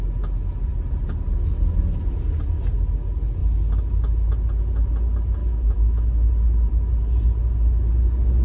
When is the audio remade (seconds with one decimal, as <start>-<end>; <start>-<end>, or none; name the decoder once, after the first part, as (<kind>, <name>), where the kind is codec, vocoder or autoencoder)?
5.4-6.3 (autoencoder, DAC-VAE)